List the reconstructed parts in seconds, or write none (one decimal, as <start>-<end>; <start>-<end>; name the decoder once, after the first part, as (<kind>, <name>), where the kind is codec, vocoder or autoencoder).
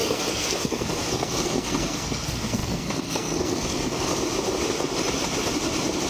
0.0-4.1 (codec, SNAC)